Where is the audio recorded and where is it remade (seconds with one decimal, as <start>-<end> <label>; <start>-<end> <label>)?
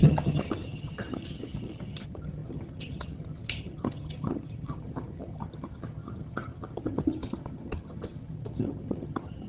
0.0-9.5 remade